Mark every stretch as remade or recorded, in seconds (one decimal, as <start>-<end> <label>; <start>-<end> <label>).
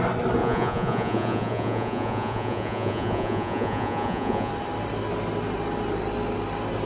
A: 0.0-0.4 recorded; 0.4-4.5 remade; 4.5-6.9 recorded